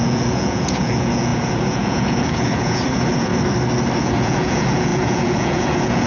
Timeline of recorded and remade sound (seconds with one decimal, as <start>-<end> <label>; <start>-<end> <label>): 0.0-3.3 remade; 3.3-4.0 recorded; 4.0-6.1 remade